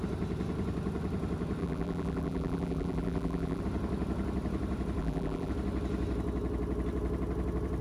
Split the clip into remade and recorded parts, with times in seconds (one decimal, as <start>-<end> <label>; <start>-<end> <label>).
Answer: 0.0-1.6 recorded; 1.6-3.6 remade; 3.6-5.0 recorded; 5.0-5.5 remade; 5.5-7.8 recorded